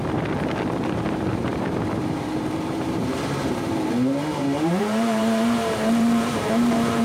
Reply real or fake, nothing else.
fake